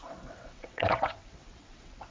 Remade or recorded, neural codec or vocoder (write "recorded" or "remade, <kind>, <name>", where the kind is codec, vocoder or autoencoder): remade, vocoder, WaveNeXt